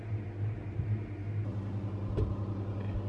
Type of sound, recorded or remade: recorded